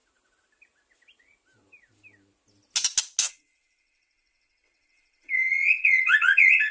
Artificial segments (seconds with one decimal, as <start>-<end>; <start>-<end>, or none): 3.3-6.7